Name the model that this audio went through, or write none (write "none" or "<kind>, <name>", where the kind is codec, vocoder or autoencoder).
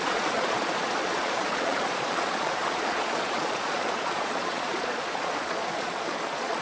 vocoder, Vocos